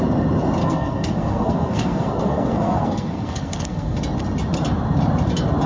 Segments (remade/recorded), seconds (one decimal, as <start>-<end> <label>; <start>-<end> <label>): 0.0-0.6 recorded; 0.6-4.0 remade; 4.0-5.7 recorded